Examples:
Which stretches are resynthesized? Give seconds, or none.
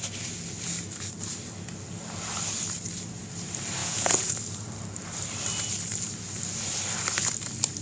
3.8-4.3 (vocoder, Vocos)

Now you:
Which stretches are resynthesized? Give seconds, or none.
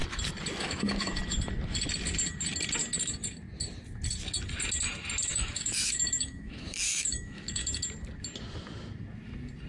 0.6-1.2 (autoencoder, DAC-VAE); 5.3-7.6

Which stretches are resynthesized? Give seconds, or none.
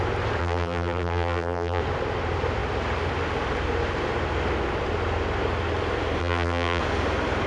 0.4-1.8 (vocoder, BigVGAN v2); 6.2-6.8